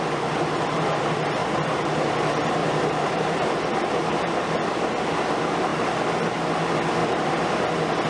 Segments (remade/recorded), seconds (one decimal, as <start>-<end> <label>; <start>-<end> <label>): 0.0-1.4 recorded; 1.4-2.1 remade; 2.1-2.6 recorded; 2.6-4.5 remade; 4.5-7.0 recorded; 7.0-7.6 remade; 7.6-8.1 recorded